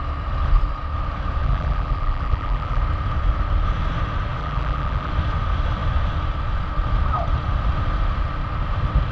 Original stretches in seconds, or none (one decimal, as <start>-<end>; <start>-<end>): 0.0-1.4; 2.8-4.4; 5.1-9.1